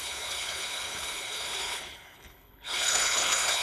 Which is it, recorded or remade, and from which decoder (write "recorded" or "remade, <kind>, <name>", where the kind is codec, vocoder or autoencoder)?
remade, codec, HILCodec